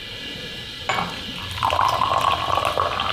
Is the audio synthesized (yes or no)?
no